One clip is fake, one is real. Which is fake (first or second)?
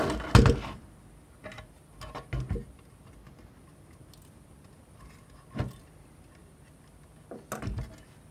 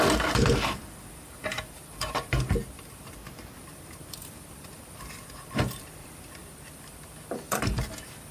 second